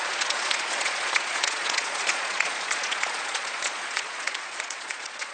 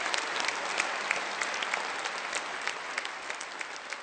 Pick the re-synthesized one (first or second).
first